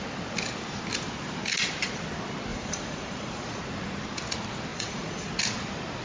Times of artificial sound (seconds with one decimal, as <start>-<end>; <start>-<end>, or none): 2.5-3.6; 4.7-5.3